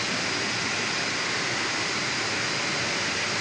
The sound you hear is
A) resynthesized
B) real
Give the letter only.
B